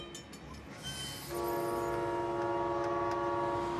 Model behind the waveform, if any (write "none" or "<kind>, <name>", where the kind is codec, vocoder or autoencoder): none